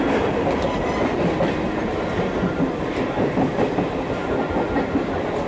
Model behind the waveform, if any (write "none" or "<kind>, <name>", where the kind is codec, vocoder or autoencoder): none